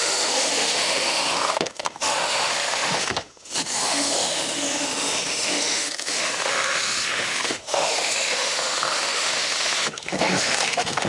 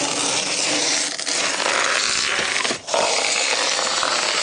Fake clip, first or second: first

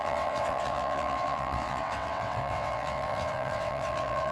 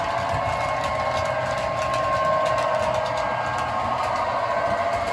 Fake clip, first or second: first